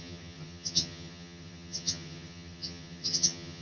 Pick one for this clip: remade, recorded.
remade